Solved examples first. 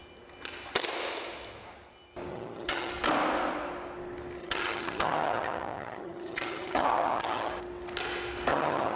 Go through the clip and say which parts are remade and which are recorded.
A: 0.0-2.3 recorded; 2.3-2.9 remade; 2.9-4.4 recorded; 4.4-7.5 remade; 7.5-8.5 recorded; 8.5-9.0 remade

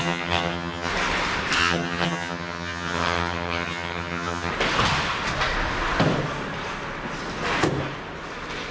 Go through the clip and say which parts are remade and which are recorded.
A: 0.0-0.9 remade; 0.9-1.6 recorded; 1.6-4.5 remade; 4.5-8.7 recorded